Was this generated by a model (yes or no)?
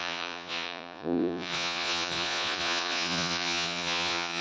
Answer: yes